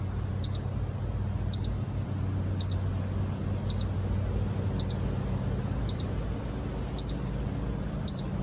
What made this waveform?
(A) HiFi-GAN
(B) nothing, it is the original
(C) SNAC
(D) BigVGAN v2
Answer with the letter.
B